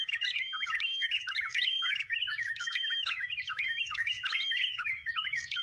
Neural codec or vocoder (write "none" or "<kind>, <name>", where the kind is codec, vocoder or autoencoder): autoencoder, DAC-VAE